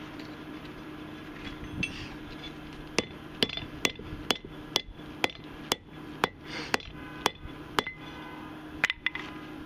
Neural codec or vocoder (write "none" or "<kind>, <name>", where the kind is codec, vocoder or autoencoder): none